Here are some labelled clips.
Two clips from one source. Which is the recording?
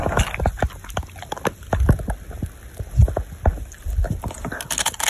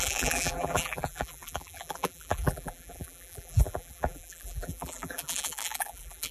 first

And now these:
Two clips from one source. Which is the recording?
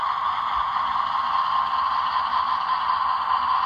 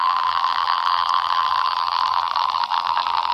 first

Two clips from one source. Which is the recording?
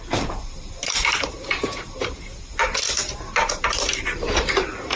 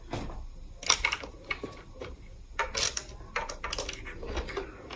second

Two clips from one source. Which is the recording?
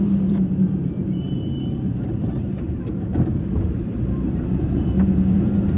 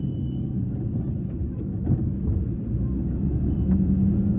second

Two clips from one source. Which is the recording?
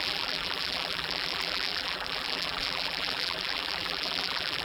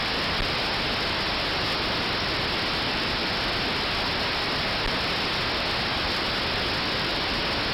second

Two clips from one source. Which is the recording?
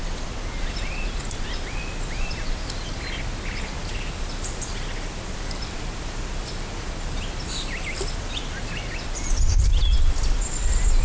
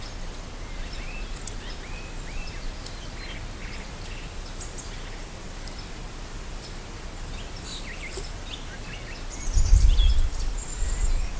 second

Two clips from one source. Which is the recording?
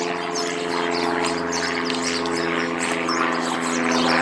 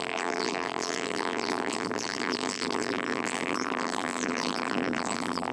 first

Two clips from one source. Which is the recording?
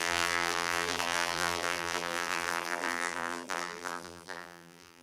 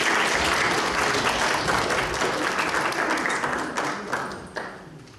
second